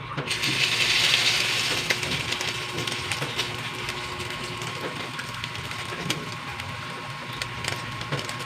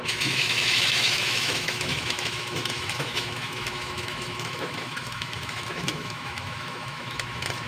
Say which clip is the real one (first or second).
first